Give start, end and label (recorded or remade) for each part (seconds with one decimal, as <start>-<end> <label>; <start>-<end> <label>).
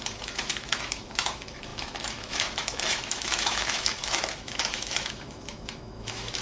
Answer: 0.0-6.4 remade